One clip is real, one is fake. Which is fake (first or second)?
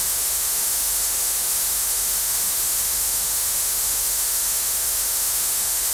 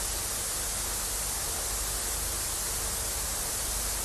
first